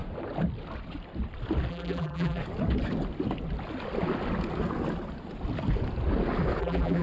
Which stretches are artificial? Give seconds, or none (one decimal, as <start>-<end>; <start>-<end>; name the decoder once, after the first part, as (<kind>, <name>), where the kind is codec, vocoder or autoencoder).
1.7-2.4 (vocoder, BigVGAN v2); 6.6-7.0